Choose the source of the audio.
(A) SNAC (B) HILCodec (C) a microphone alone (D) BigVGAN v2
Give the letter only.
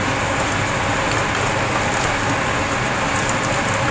C